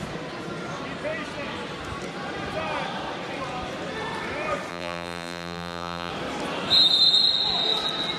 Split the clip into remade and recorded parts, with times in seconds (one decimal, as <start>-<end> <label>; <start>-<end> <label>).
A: 0.0-4.7 recorded; 4.7-6.1 remade; 6.1-8.2 recorded

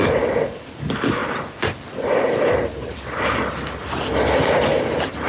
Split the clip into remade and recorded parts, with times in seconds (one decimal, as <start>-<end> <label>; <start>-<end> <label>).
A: 0.0-5.3 recorded

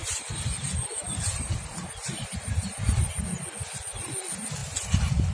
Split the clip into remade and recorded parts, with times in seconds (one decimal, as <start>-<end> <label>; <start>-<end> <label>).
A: 0.0-3.2 remade; 3.2-5.3 recorded